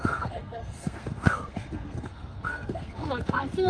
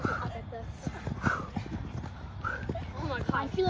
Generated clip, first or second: first